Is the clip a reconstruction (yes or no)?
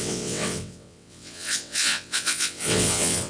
yes